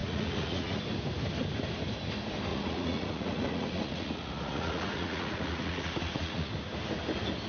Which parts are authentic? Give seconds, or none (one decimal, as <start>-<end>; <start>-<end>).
0.8-2.5; 6.5-7.5